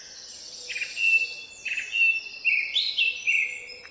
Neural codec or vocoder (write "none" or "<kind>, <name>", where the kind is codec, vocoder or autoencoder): none